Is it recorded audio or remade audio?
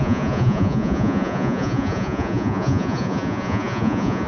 remade